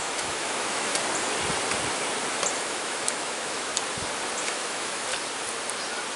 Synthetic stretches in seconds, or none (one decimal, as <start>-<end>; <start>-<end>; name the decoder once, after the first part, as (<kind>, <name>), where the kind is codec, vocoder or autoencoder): 0.0-0.9 (autoencoder, DAC-VAE); 2.6-3.7; 4.4-5.1